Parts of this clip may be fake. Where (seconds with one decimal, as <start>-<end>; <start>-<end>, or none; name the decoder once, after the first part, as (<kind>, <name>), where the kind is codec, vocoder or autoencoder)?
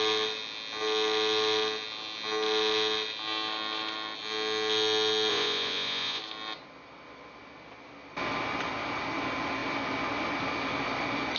5.3-6.2 (vocoder, Vocos)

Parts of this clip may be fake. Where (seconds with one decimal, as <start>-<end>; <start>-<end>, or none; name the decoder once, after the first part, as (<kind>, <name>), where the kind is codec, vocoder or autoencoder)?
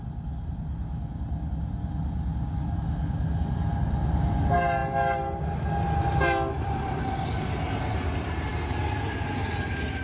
none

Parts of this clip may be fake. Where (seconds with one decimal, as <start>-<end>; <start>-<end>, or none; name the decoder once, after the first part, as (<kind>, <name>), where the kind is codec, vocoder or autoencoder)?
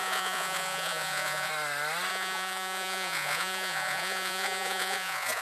0.0-1.5 (vocoder, Vocos); 2.1-5.4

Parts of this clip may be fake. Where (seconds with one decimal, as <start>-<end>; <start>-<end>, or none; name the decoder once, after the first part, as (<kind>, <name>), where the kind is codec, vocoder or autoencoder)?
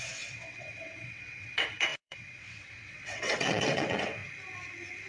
0.0-4.2 (vocoder, WaveNeXt)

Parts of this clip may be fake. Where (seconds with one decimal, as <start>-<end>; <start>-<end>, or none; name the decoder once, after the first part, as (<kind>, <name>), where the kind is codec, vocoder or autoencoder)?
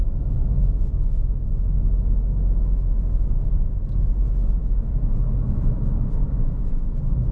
0.0-2.9 (autoencoder, DAC-VAE); 4.6-5.8; 6.2-6.7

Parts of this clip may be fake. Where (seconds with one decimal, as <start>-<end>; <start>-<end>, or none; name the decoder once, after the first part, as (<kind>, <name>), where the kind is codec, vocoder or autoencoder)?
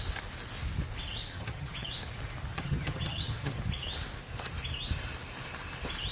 1.3-1.9 (vocoder, HiFi-GAN); 2.5-3.6